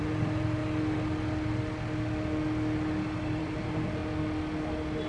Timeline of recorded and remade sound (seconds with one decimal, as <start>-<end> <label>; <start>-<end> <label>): 0.0-0.6 remade; 0.6-3.4 recorded; 3.4-4.0 remade; 4.0-5.1 recorded